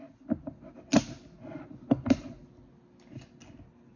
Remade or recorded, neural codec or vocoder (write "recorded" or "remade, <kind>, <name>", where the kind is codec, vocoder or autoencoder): recorded